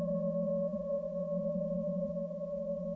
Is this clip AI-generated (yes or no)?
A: yes